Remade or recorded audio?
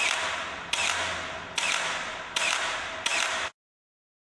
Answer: recorded